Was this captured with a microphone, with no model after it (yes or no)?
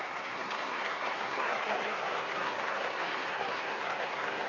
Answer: no